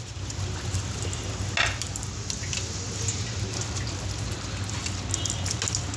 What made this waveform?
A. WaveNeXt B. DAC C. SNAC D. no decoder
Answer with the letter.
D